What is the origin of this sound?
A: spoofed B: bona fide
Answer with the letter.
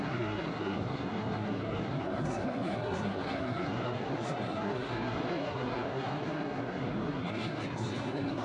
A